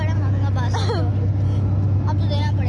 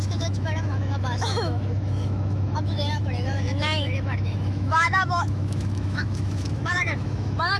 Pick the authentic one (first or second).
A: first